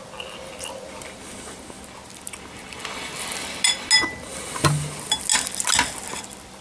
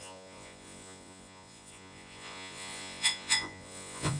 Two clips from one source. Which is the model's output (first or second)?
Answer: second